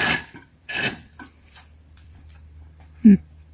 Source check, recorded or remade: remade